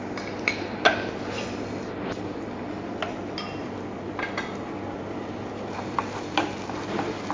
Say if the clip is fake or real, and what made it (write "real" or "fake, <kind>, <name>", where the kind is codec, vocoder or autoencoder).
real